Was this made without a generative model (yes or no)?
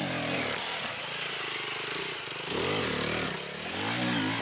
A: yes